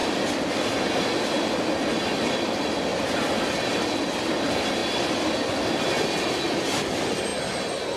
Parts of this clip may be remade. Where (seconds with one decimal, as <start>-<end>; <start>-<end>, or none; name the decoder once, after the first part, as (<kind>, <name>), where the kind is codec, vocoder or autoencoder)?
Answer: none